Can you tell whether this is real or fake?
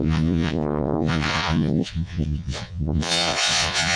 fake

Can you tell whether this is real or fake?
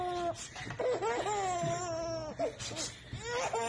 real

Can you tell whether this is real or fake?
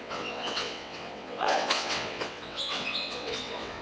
fake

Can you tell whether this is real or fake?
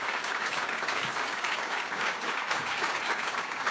fake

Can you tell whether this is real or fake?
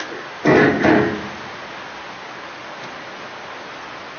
real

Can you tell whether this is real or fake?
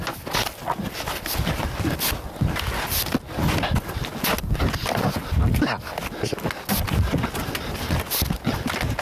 real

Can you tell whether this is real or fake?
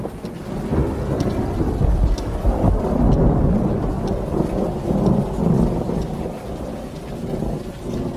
real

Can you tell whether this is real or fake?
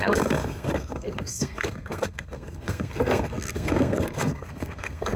fake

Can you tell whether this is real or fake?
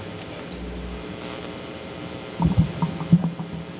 real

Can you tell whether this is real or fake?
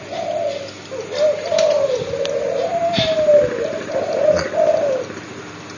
real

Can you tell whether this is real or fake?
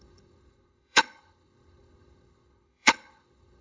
fake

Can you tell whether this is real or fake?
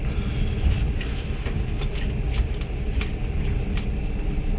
real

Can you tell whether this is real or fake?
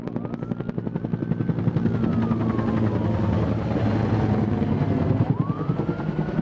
real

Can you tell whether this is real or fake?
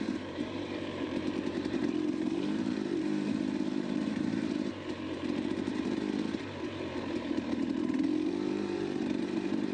fake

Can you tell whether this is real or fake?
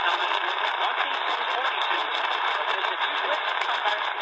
real